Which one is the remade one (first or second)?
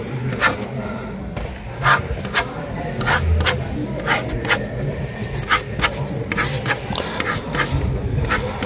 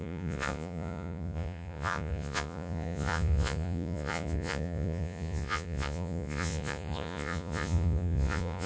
second